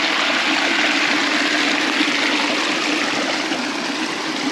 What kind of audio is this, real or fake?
real